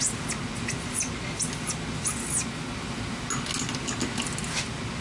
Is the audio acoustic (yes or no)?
yes